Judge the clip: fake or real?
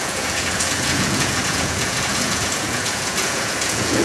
fake